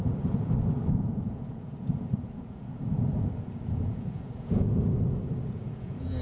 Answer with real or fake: fake